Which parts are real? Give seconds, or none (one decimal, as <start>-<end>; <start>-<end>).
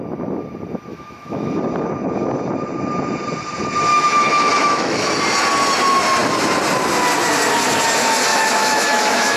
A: 0.0-0.9; 1.6-3.9; 5.1-8.3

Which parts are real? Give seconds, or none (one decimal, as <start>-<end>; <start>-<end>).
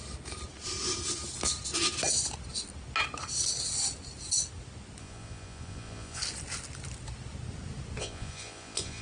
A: 0.0-5.0; 6.2-8.0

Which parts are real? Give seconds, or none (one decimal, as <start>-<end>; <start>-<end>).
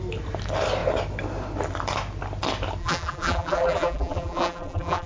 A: 0.0-2.8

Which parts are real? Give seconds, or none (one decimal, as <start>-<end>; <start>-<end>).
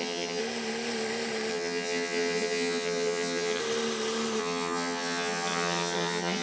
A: 0.4-1.5; 3.6-4.4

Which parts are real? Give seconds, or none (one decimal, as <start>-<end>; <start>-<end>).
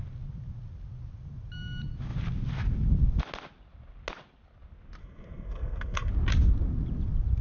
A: 0.0-5.0; 6.1-7.4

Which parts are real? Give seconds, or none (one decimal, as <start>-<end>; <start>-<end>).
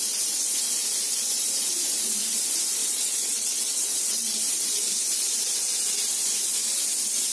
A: 0.0-2.8; 4.4-7.3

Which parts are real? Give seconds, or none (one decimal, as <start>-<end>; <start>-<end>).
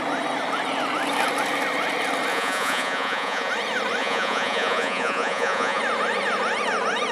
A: 0.0-2.3; 3.5-4.0; 5.8-7.1